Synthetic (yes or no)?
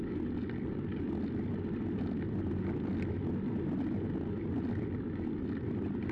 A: no